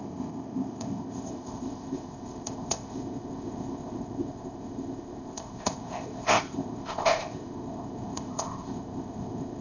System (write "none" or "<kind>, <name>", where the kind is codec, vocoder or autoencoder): codec, ZipCodec